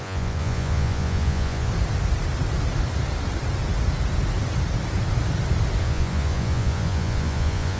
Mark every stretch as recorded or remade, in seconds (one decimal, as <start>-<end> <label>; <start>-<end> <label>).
0.0-1.7 remade; 1.7-5.8 recorded; 5.8-7.8 remade